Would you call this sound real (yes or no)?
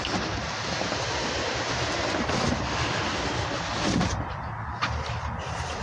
yes